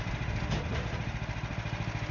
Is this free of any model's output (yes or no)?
yes